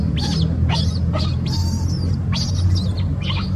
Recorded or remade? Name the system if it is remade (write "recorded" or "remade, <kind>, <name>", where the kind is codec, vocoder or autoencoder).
recorded